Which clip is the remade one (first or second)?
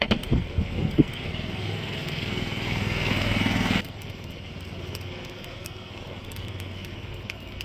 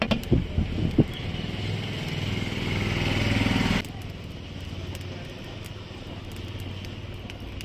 first